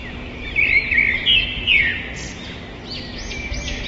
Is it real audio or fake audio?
real